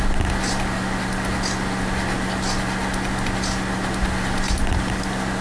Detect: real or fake real